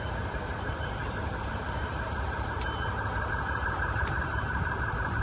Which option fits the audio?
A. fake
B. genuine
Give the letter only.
A